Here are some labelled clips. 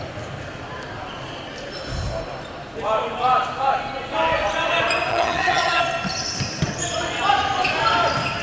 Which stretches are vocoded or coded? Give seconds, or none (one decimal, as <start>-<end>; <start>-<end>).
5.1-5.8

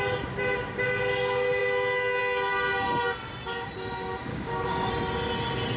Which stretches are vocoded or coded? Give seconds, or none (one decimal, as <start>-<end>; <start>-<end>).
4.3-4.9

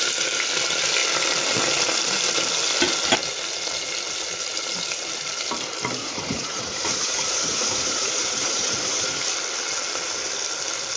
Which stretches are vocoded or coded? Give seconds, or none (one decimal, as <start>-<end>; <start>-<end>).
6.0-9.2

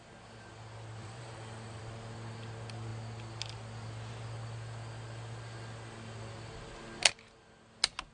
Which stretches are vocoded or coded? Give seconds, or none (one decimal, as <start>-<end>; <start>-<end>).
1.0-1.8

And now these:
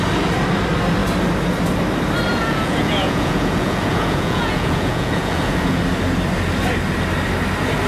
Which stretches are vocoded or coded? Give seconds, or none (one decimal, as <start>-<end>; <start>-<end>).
2.3-5.8

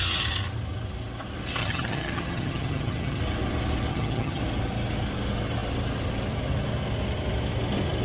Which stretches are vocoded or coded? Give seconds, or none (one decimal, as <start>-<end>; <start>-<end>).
1.6-3.2; 3.9-4.4